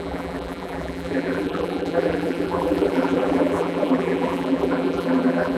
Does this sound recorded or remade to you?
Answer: remade